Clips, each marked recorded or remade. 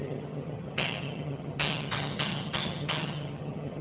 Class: remade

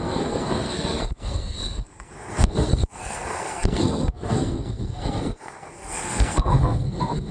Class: remade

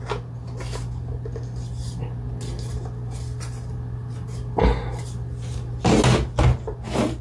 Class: recorded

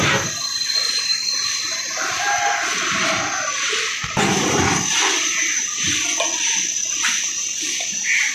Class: recorded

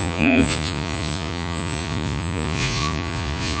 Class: remade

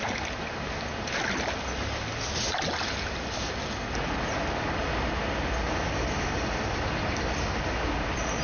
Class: recorded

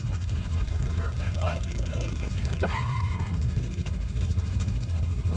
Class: remade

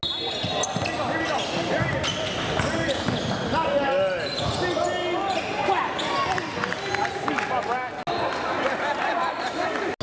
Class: recorded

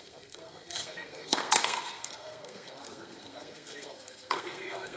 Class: remade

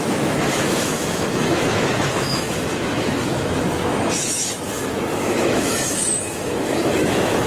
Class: remade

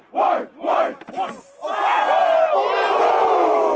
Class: recorded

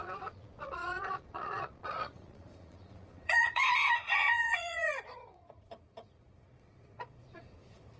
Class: remade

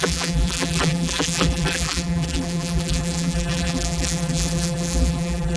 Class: remade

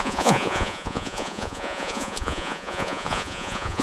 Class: remade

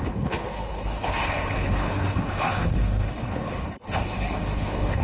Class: remade